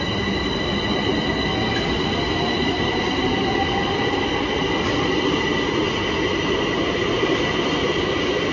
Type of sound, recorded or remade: recorded